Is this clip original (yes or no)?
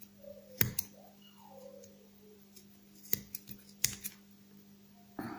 yes